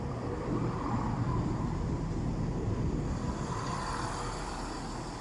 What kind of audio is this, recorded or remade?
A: recorded